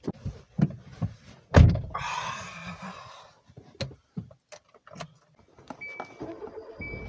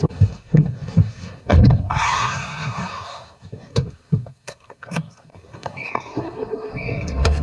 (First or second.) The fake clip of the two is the second